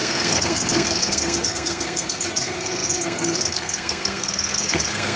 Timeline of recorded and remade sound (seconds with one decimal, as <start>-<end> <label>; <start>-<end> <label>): 0.0-5.2 remade